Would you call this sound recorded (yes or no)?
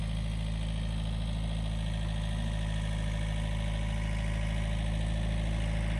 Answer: yes